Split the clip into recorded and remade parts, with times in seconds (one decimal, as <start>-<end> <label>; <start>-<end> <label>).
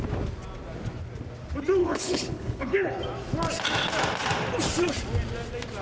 0.0-1.8 recorded; 1.8-3.0 remade; 3.0-5.8 recorded